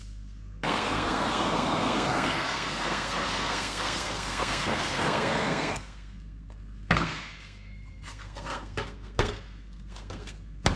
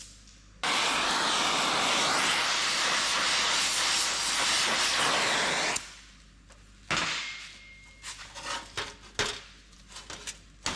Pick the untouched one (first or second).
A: second